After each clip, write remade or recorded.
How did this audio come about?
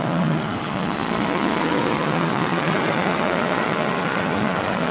remade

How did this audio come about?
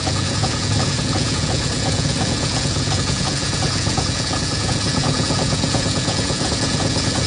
remade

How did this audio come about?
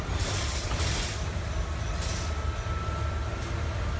recorded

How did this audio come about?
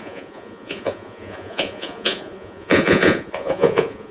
remade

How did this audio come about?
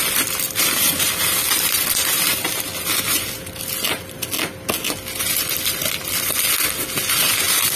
recorded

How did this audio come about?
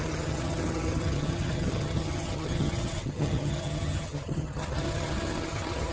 remade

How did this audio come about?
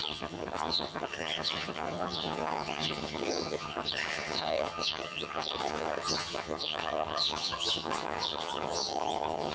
remade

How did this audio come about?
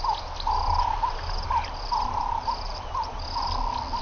recorded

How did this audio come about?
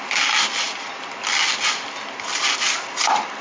recorded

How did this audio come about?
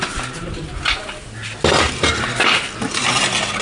recorded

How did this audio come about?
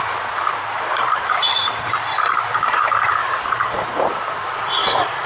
recorded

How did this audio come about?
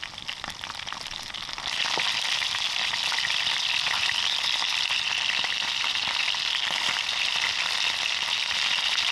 recorded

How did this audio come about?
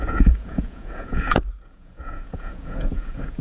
remade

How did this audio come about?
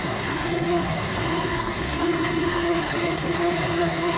remade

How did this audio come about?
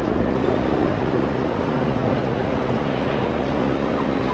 remade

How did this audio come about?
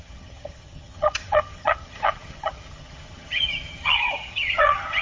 remade